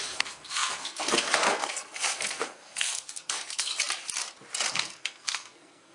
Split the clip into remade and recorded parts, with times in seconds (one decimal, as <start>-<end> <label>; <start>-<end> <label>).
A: 0.0-3.7 remade; 3.7-4.7 recorded; 4.7-5.9 remade